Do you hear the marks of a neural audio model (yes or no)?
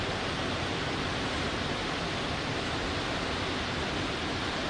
no